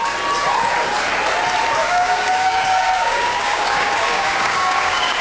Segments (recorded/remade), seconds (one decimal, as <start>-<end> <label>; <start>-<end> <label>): 0.0-1.8 recorded; 1.8-5.2 remade